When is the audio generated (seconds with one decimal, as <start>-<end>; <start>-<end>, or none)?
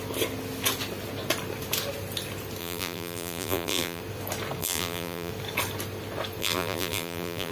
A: 2.6-4.0; 4.6-5.3; 6.4-7.5